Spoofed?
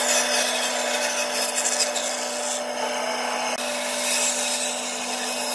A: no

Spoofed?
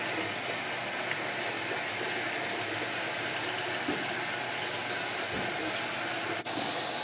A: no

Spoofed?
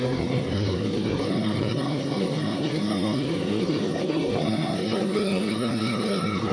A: yes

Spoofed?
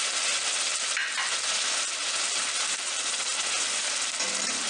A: no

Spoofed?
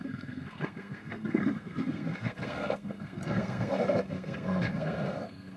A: yes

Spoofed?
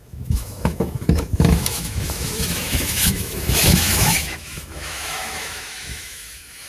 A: yes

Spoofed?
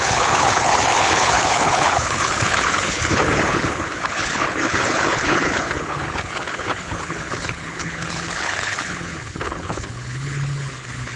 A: yes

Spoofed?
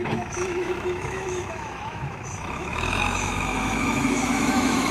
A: yes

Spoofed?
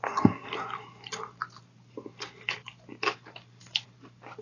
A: no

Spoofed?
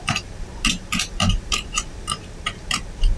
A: yes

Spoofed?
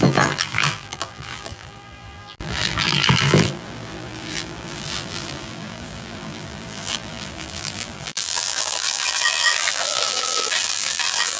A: yes